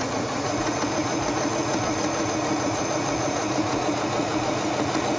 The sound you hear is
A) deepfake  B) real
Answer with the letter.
A